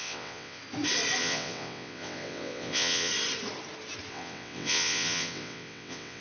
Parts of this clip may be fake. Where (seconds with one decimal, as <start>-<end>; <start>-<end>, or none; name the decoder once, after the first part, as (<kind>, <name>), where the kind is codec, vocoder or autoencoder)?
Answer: 0.0-0.6 (vocoder, WaveNeXt); 1.2-3.1; 4.1-6.2